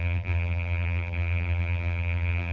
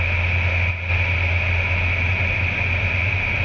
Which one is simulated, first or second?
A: first